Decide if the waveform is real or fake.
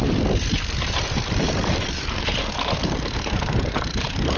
fake